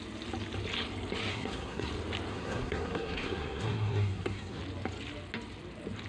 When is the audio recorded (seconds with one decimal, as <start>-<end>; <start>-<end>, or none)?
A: 0.0-1.3; 1.9-2.3; 4.6-6.1